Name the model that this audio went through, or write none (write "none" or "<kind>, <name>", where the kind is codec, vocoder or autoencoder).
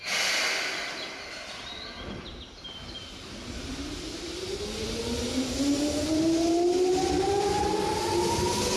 none